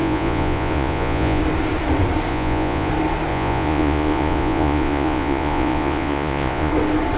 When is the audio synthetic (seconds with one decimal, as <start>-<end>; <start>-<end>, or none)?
0.0-1.4; 2.3-2.9; 3.3-6.7

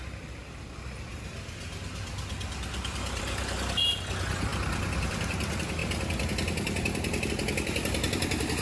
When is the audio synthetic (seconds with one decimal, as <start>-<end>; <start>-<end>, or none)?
none

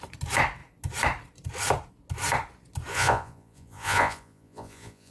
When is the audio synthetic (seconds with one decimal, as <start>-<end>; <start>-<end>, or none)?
2.9-5.1

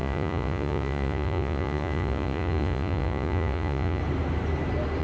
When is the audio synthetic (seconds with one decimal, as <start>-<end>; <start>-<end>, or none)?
0.0-4.0

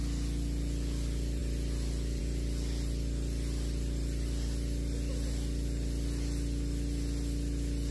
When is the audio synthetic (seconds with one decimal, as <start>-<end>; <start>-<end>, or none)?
none